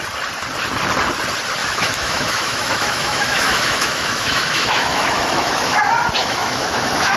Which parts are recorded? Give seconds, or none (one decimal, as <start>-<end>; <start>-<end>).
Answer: 0.0-1.6; 5.8-6.2